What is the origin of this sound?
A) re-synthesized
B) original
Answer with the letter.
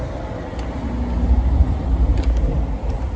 B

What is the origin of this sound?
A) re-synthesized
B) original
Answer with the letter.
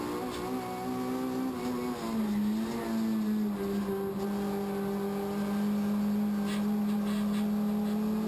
B